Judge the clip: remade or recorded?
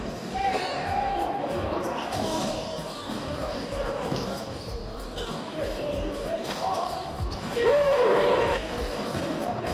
remade